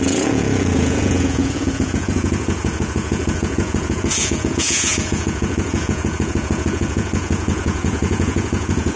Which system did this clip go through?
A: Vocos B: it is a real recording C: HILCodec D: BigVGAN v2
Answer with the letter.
A